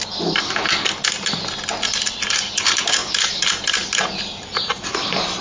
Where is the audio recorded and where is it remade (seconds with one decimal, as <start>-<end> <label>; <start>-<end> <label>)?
0.0-5.4 recorded